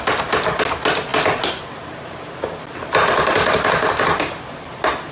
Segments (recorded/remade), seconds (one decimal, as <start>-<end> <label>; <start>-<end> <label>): 0.0-5.1 recorded